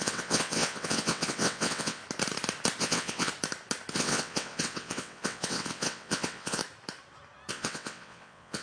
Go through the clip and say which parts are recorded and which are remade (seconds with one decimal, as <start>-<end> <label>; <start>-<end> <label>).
0.0-2.0 remade; 2.0-2.8 recorded; 2.8-3.3 remade; 3.3-3.9 recorded; 3.9-6.6 remade; 6.6-7.5 recorded; 7.5-8.6 remade